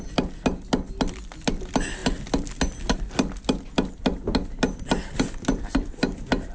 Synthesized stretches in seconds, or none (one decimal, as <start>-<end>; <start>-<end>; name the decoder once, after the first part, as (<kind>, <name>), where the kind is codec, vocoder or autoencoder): none